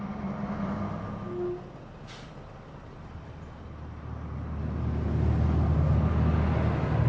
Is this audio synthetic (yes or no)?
no